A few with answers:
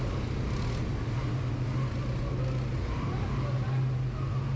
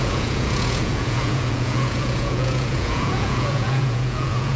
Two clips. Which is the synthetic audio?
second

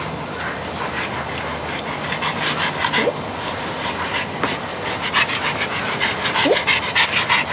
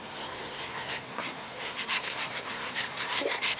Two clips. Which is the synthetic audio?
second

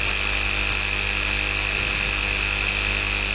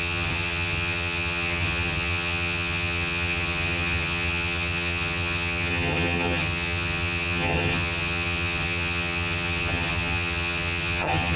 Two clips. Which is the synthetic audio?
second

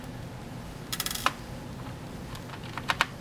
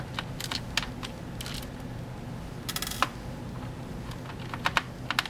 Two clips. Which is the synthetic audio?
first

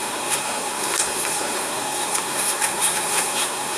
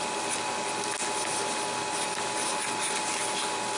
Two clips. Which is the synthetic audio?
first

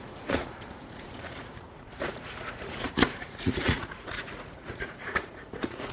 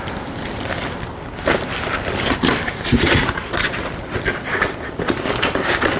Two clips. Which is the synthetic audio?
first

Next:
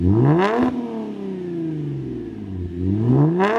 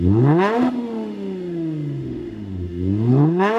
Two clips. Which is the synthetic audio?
second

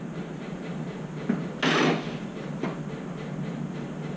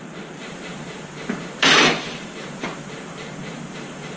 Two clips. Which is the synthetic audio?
second